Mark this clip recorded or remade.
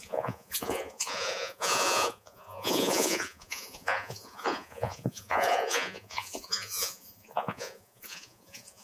remade